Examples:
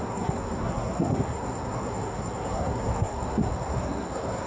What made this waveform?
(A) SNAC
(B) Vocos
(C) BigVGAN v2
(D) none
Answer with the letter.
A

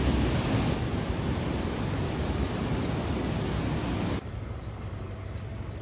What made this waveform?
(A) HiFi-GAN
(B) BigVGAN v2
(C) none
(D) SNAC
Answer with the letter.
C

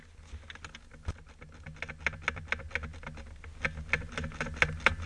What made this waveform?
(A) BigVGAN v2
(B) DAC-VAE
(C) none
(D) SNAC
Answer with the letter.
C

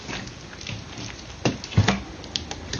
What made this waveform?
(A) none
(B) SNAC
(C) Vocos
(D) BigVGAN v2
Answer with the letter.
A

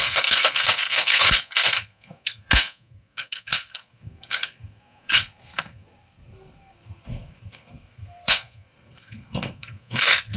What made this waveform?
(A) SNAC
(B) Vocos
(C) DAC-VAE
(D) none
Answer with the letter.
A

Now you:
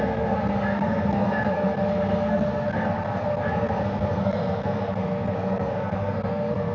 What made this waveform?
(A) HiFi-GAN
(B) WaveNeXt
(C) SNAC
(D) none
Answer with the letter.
C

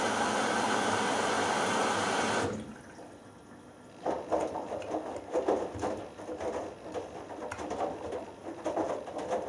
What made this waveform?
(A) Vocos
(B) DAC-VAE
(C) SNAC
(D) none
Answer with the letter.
D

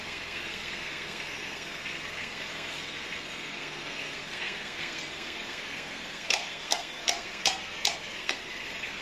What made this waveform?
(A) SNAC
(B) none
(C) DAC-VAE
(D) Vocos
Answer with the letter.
A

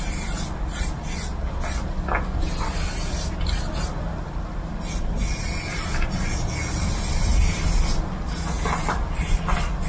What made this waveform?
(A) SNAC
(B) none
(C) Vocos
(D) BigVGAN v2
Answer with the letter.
B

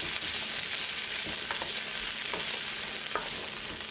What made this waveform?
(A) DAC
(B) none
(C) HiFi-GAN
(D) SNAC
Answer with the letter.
B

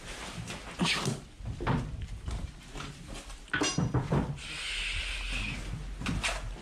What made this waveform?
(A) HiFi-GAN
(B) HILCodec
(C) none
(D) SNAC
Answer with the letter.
C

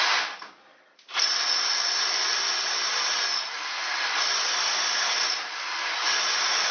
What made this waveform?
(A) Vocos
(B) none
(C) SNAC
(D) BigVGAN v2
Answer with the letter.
B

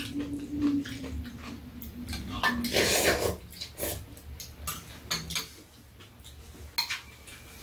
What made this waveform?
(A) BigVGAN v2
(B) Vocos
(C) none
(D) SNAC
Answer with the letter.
C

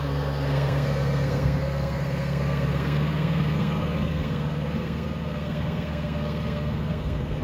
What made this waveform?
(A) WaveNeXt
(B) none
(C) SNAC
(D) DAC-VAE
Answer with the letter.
C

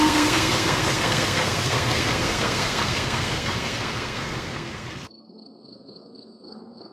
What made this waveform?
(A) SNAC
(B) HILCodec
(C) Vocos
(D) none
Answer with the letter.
A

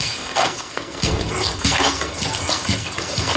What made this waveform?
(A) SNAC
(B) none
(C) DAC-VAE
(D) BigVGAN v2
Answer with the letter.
A